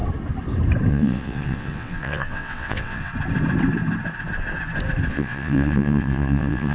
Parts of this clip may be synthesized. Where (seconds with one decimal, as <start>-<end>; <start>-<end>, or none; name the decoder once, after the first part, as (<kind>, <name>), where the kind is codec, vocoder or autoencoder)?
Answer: 0.9-3.1 (vocoder, WaveNeXt); 5.1-6.7